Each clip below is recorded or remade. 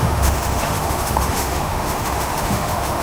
remade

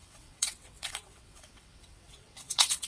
remade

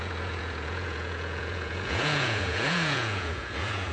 remade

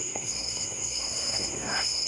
remade